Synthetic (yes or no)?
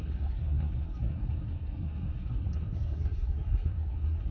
yes